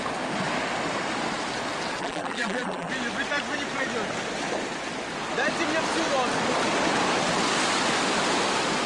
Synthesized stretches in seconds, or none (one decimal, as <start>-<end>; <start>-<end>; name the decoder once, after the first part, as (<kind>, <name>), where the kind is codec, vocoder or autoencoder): 2.0-2.9 (vocoder, BigVGAN v2)